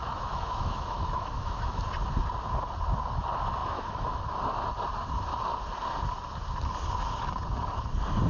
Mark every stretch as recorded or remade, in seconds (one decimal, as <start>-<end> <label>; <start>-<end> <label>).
0.0-1.8 remade; 1.8-3.6 recorded; 3.6-4.2 remade; 4.2-8.3 recorded